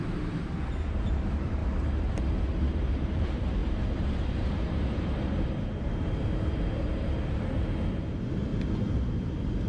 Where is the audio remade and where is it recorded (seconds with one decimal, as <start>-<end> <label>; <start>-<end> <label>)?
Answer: 0.0-1.6 remade; 1.6-2.2 recorded; 2.2-8.5 remade; 8.5-9.7 recorded